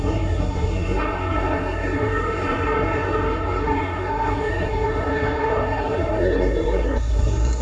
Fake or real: fake